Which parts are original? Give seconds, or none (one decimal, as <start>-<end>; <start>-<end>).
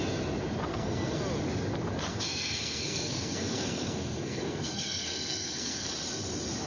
0.0-0.7; 1.2-2.1; 5.9-6.7